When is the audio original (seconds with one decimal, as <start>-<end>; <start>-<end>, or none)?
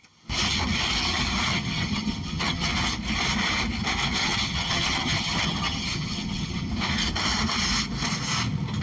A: 0.0-1.5; 2.7-4.2; 6.7-8.8